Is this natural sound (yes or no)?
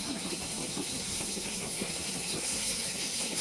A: no